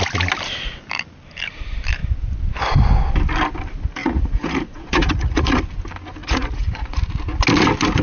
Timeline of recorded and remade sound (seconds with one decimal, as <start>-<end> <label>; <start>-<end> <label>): 0.0-4.0 recorded; 4.0-5.6 remade; 5.6-6.2 recorded; 6.2-7.1 remade; 7.1-8.0 recorded